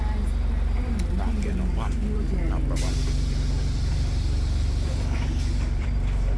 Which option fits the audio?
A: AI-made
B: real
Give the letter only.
A